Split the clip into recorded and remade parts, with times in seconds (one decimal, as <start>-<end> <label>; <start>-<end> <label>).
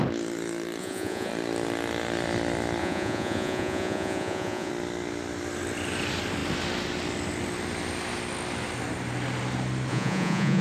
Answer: 0.0-0.8 recorded; 0.8-1.3 remade; 1.3-2.8 recorded; 2.8-4.7 remade; 4.7-9.9 recorded; 9.9-10.6 remade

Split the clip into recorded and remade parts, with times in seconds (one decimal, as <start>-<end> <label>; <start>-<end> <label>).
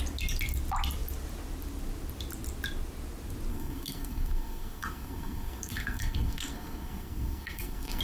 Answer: 0.0-3.5 recorded; 3.5-8.0 remade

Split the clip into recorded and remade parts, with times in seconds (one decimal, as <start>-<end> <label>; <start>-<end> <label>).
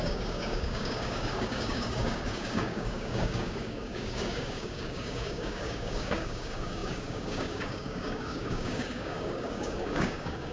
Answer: 0.0-10.5 remade